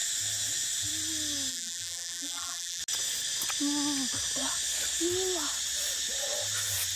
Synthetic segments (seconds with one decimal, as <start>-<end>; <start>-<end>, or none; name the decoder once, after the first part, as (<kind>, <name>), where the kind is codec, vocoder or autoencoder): 1.5-2.8 (vocoder, BigVGAN v2)